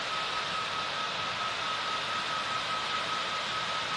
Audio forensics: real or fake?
real